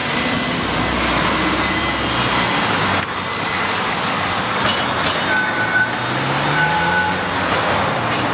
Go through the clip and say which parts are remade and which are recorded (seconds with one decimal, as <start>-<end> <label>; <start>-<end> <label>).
0.0-3.3 recorded; 3.3-4.6 remade; 4.6-8.3 recorded